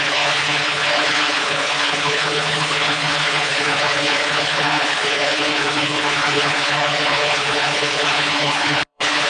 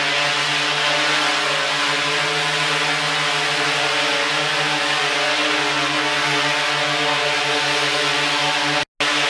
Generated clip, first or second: first